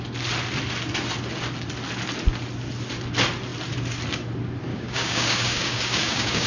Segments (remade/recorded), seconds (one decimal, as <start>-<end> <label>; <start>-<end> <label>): 0.0-4.7 recorded; 4.7-6.5 remade